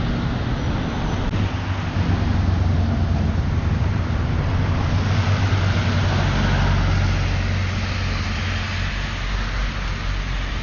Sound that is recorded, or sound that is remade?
recorded